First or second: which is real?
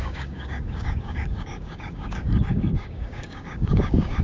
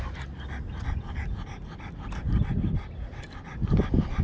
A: second